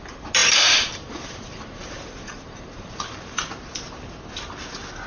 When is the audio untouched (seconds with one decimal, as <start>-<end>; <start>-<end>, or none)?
0.0-0.4; 3.5-5.1